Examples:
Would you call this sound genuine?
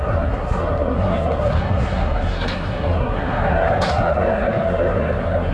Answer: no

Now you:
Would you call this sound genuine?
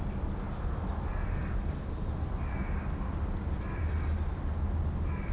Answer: yes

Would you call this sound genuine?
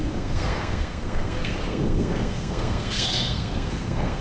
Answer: no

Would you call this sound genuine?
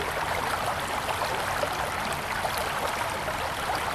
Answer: yes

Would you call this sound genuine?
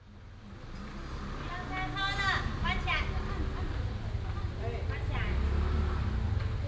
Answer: yes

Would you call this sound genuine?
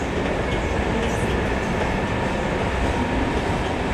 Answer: yes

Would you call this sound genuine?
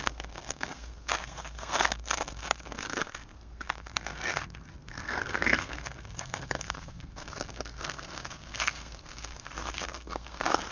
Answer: no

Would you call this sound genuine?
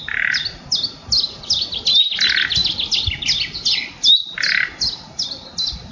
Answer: yes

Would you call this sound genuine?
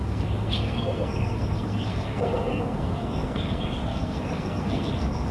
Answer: no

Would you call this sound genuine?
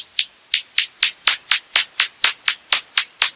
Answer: yes